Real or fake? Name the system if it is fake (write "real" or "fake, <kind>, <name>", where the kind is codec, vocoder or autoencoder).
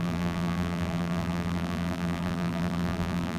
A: fake, vocoder, BigVGAN v2